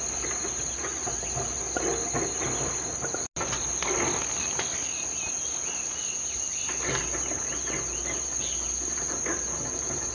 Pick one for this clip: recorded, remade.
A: recorded